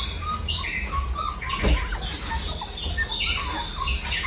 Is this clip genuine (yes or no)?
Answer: yes